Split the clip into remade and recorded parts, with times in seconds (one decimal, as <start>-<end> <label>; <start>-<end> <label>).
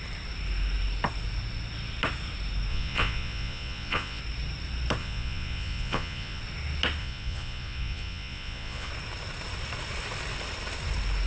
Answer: 0.0-2.7 recorded; 2.7-4.2 remade; 4.2-5.0 recorded; 5.0-6.4 remade; 6.4-7.0 recorded; 7.0-8.9 remade; 8.9-11.3 recorded